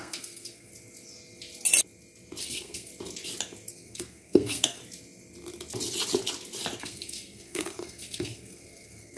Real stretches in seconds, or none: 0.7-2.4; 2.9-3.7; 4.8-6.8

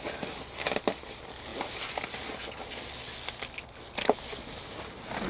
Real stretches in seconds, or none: 0.0-5.3

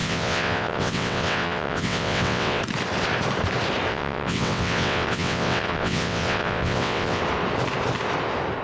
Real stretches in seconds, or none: 2.6-3.9; 7.2-8.6

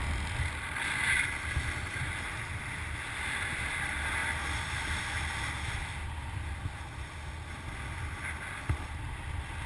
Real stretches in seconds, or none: 0.0-9.7